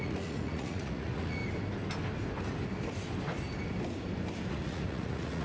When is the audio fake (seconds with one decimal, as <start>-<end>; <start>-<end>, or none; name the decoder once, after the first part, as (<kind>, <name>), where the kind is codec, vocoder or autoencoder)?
0.0-1.4 (vocoder, Vocos); 4.5-5.4